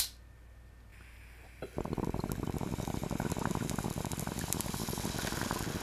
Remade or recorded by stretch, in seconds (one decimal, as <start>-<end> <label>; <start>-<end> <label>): 0.0-5.8 recorded